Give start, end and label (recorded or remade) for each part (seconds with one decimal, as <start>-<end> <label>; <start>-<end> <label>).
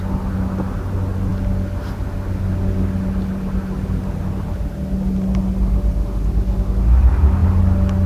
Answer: 0.0-8.1 recorded